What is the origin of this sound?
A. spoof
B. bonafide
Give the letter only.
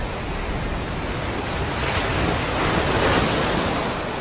B